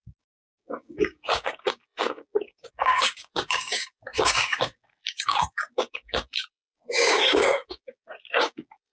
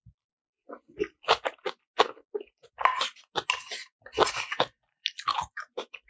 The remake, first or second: first